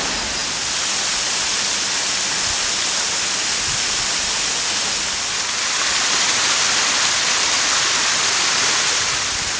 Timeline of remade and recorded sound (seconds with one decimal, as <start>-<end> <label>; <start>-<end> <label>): 0.0-9.6 recorded